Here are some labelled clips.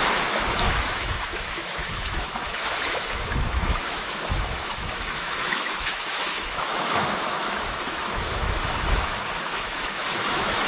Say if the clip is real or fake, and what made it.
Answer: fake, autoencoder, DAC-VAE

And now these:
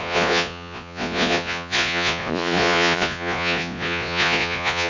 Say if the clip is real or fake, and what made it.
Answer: fake, vocoder, Vocos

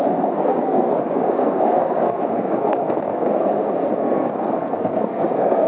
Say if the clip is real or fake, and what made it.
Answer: fake, codec, SNAC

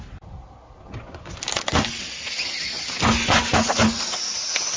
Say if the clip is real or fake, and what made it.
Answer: real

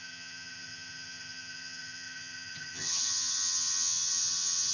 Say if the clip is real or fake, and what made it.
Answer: fake, vocoder, HiFi-GAN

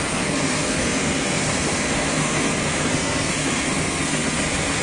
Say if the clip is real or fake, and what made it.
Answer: fake, codec, SNAC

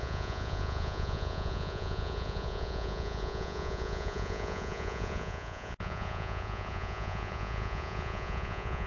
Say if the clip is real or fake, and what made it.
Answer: fake, vocoder, Vocos